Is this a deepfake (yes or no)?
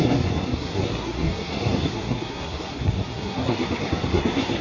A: yes